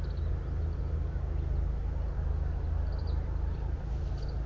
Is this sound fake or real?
real